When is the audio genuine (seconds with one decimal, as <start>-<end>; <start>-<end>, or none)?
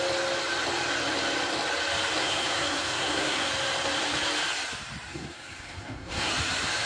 0.0-2.2; 3.5-5.1; 6.3-6.9